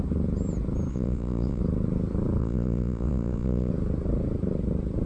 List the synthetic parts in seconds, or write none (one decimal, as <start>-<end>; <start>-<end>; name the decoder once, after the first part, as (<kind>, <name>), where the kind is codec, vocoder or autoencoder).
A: 0.9-1.6 (vocoder, WaveNeXt); 2.4-3.7